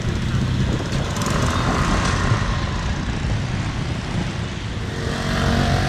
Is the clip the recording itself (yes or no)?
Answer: yes